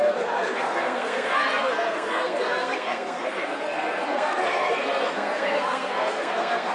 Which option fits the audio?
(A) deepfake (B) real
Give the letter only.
A